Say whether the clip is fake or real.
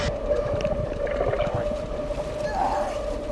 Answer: real